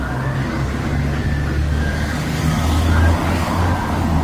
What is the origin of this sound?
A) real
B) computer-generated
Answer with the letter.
B